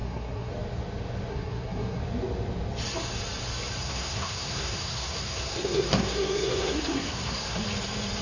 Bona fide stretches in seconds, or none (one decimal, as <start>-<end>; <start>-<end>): 0.5-1.3; 2.0-3.8; 7.6-8.2

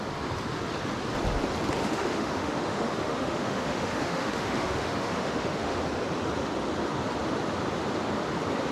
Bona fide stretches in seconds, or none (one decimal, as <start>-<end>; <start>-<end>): 0.0-1.8; 5.8-8.7